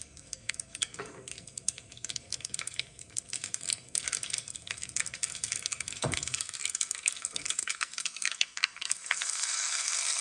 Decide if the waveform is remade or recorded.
remade